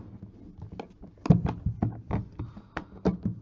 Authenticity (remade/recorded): recorded